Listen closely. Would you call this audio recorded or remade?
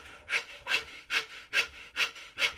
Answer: remade